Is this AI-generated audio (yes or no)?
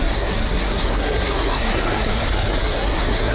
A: yes